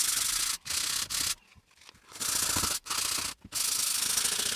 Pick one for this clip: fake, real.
real